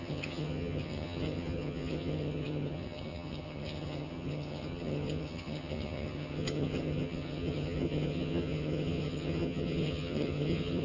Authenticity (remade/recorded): remade